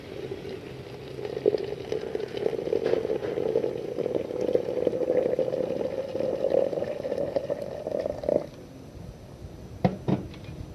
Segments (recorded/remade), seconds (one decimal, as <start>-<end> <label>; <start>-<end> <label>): 0.0-10.7 recorded